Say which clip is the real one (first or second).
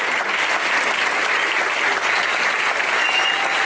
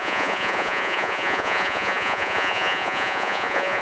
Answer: first